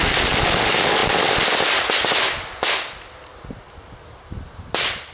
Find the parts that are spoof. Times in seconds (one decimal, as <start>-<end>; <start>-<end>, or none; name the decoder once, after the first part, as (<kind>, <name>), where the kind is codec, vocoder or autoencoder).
none